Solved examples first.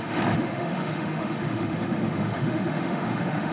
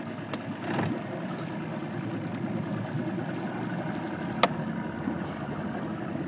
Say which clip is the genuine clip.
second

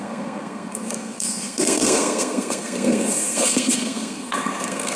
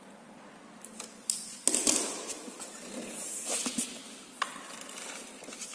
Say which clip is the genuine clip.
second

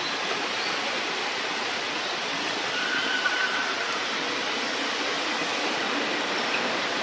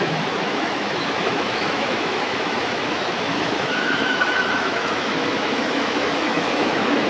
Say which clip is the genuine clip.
first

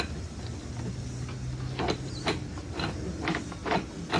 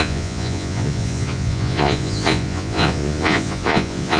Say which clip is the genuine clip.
first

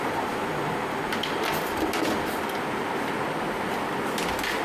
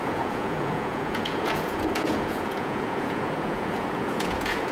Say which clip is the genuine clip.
first